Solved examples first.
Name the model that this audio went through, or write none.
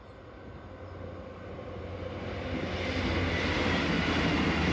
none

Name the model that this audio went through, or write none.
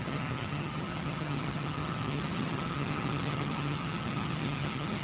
vocoder, HiFi-GAN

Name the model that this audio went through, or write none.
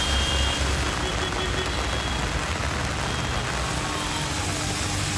none